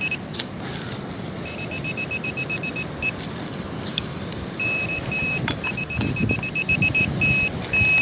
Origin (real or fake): fake